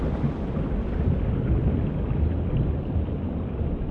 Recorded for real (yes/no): yes